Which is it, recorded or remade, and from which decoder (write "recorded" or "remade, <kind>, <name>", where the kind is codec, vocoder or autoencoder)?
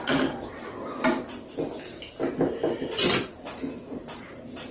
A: recorded